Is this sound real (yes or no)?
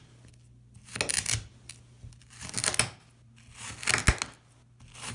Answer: yes